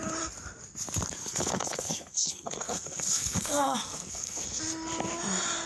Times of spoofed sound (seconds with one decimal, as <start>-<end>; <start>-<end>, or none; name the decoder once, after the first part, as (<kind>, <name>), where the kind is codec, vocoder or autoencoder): 1.2-4.6 (codec, SNAC)